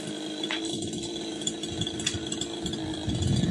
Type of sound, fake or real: real